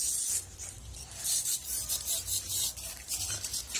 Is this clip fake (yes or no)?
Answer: no